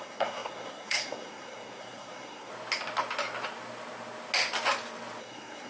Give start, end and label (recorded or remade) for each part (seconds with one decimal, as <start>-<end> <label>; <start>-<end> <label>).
0.0-2.5 remade; 2.5-5.2 recorded; 5.2-5.7 remade